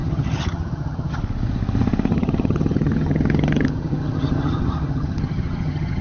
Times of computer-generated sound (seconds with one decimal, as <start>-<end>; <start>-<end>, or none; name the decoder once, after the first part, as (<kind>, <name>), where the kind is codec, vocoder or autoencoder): 0.0-1.2 (vocoder, HiFi-GAN); 2.1-6.0

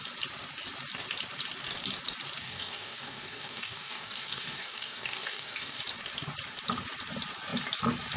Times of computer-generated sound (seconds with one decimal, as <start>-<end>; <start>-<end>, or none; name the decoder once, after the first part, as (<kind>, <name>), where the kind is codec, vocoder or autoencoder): 2.4-5.8 (codec, DAC)

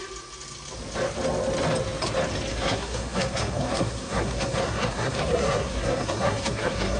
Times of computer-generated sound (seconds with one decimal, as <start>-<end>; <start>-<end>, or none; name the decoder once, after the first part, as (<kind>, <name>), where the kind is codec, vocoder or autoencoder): 2.5-7.0 (codec, SNAC)

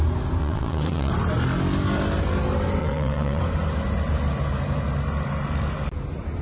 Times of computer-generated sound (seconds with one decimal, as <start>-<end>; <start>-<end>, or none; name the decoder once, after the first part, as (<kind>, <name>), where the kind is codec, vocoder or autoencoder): 0.4-1.1 (vocoder, WaveNeXt); 2.8-3.4

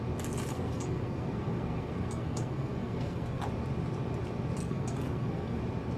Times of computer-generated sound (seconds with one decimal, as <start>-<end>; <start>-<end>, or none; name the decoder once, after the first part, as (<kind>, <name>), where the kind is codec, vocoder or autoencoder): 0.5-3.4 (codec, SNAC); 4.6-5.6

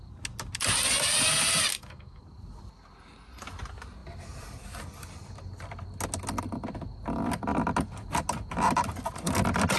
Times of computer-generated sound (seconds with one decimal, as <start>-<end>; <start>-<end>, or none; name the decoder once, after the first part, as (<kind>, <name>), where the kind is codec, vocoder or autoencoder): 1.7-2.2 (autoencoder, DAC-VAE)